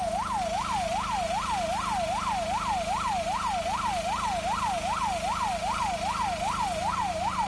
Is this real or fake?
real